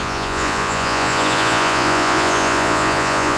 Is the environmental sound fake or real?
fake